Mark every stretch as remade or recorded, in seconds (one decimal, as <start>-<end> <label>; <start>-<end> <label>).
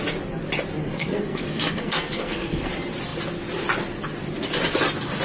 0.0-0.8 recorded; 0.8-2.7 remade; 2.7-5.2 recorded